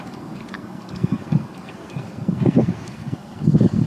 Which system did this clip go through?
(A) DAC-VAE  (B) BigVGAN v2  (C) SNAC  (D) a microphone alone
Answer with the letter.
C